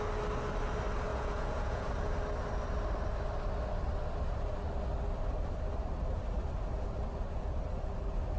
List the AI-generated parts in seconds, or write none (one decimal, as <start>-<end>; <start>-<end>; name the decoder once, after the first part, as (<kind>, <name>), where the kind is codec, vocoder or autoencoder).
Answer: 1.1-1.9 (vocoder, Vocos)